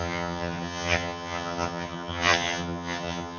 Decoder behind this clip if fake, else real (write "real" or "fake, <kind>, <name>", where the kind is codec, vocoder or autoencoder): fake, vocoder, HiFi-GAN